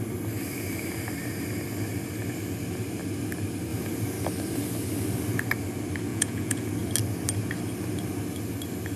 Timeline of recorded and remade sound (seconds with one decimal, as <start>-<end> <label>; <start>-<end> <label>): 0.0-6.1 recorded; 6.1-6.7 remade; 6.7-9.0 recorded

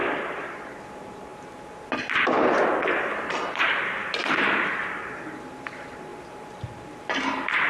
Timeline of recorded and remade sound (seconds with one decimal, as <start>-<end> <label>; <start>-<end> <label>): 0.0-1.3 remade; 1.3-3.0 recorded; 3.0-4.0 remade; 4.0-4.7 recorded; 4.7-7.7 remade

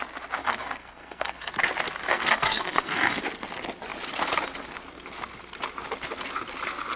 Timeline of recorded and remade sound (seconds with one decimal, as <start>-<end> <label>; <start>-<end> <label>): 0.0-0.4 recorded; 0.4-1.5 remade; 1.5-2.1 recorded; 2.1-3.2 remade; 3.2-7.0 recorded

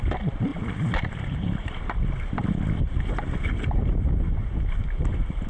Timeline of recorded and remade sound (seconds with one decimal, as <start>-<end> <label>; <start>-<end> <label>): 0.0-5.5 recorded

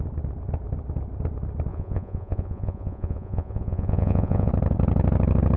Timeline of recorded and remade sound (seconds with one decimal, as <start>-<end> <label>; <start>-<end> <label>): 0.0-1.7 recorded; 1.7-4.5 remade; 4.5-5.6 recorded

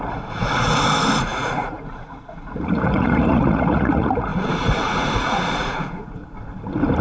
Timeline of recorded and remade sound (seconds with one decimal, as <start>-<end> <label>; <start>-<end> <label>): 0.0-6.2 remade; 6.2-7.0 recorded

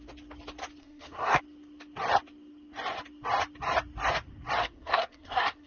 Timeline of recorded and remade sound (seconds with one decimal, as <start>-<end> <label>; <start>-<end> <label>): 0.0-0.8 recorded; 0.8-1.4 remade; 1.4-4.6 recorded; 4.6-5.7 remade